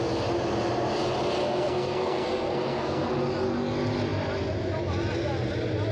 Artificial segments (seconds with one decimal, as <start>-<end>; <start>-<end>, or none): 1.4-3.1